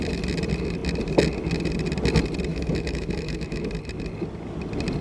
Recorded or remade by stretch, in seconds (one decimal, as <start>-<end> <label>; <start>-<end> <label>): 0.0-2.5 recorded; 2.5-3.7 remade; 3.7-5.0 recorded

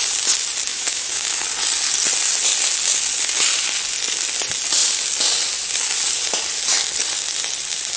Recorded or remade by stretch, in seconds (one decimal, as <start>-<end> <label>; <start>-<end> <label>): 0.0-0.7 recorded; 0.7-1.4 remade; 1.4-8.0 recorded

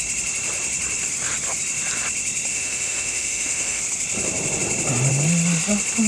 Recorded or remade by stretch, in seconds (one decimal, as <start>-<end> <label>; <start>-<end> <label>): 0.0-2.5 recorded; 2.5-3.8 remade; 3.8-6.1 recorded

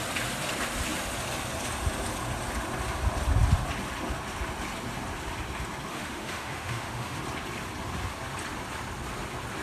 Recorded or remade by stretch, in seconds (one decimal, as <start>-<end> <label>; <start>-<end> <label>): 0.0-5.9 recorded; 5.9-7.2 remade; 7.2-9.6 recorded